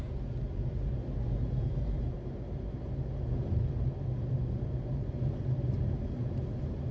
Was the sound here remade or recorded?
recorded